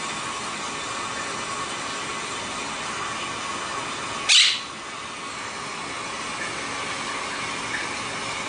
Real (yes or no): yes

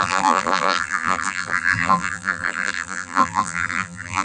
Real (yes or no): no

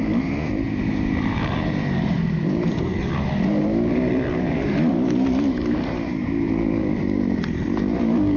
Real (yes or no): no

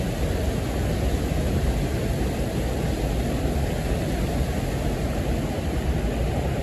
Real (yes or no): yes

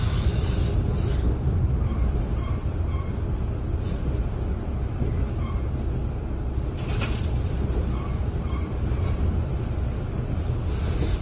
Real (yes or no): yes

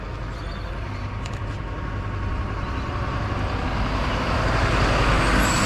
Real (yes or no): yes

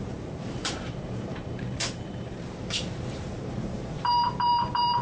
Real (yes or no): no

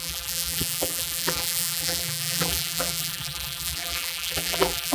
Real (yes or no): no